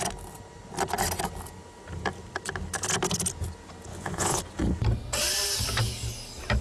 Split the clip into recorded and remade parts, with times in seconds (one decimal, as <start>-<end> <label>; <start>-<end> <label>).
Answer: 0.0-3.9 recorded; 3.9-4.4 remade; 4.4-6.6 recorded